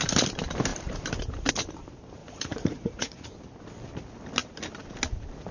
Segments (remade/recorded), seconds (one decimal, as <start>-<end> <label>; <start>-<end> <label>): 0.0-2.2 recorded; 2.2-3.3 remade; 3.3-5.5 recorded